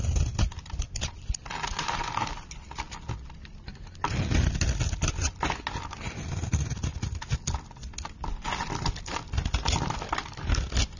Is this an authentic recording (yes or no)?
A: yes